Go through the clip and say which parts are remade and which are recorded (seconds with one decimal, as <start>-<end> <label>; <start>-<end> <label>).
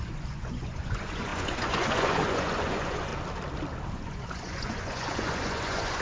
0.0-3.1 remade; 3.1-3.9 recorded; 3.9-6.0 remade